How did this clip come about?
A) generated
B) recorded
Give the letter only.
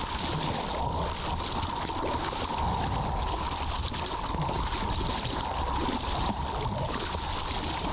B